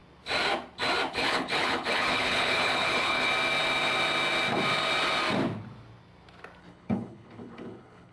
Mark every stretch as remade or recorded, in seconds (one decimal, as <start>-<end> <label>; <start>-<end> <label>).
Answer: 0.0-1.1 recorded; 1.1-3.3 remade; 3.3-6.6 recorded; 6.6-8.1 remade